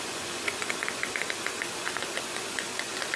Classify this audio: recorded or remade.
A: remade